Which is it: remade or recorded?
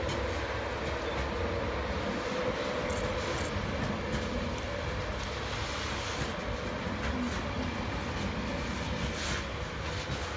recorded